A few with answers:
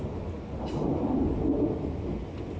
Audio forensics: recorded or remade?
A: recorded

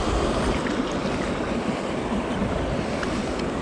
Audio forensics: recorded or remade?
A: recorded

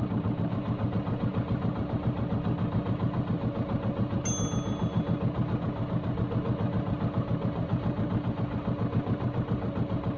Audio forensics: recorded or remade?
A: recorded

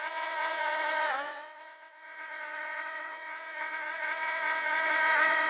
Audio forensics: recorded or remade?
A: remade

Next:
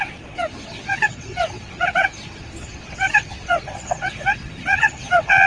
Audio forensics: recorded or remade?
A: remade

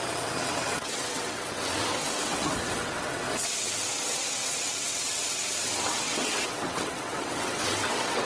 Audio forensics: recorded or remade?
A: remade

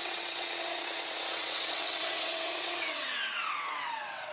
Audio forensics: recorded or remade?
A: remade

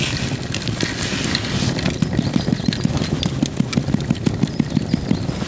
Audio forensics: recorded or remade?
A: recorded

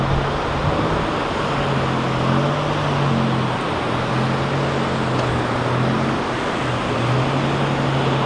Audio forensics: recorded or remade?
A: recorded